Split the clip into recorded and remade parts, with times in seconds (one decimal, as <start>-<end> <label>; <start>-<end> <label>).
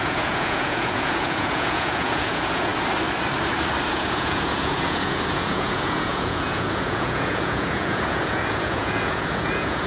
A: 0.0-2.7 remade; 2.7-3.9 recorded; 3.9-9.9 remade